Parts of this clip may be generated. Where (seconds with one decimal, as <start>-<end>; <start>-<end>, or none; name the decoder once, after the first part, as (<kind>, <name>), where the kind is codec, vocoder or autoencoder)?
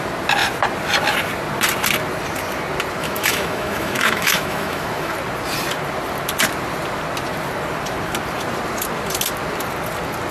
3.0-5.1 (autoencoder, DAC-VAE)